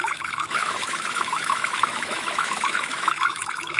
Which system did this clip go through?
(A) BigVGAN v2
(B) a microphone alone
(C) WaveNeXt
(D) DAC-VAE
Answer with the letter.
D